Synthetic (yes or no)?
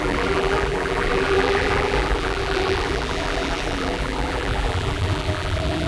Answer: yes